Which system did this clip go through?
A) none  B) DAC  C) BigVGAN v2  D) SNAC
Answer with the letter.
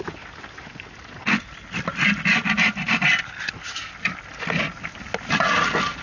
A